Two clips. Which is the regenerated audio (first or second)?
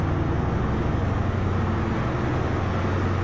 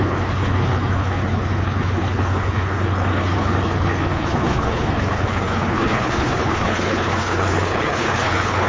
second